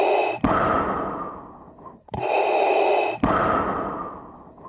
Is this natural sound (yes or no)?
yes